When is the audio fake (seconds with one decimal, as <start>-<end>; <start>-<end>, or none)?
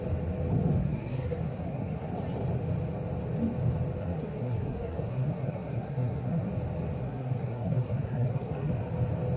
0.8-2.1; 4.0-6.5; 7.0-8.7